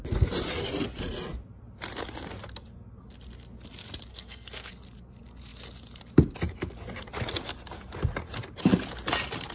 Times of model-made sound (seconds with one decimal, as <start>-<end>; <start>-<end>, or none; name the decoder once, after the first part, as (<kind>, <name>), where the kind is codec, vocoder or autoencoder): 4.1-4.7 (codec, SNAC)